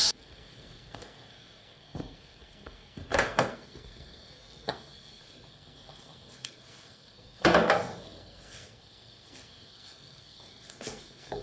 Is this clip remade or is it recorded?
remade